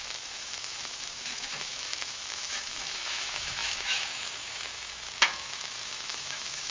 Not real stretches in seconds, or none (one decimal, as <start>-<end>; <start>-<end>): 0.0-6.7

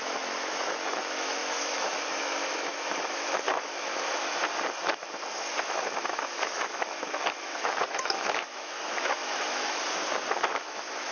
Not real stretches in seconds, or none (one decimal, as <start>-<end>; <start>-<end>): 0.0-4.3; 5.6-9.8; 10.5-11.1

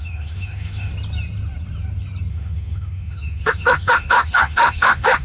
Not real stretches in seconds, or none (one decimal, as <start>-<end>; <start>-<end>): 0.0-0.9; 2.3-5.2

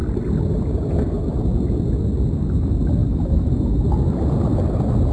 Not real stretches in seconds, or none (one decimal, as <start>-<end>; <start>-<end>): 3.0-3.8

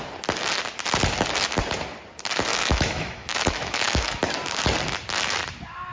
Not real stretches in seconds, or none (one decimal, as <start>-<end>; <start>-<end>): 2.5-4.2

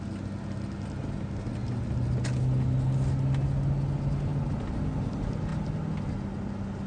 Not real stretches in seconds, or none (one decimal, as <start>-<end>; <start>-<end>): none